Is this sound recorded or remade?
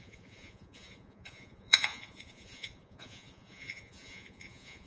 remade